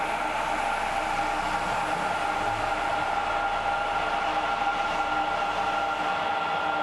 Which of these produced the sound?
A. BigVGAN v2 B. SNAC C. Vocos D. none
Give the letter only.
D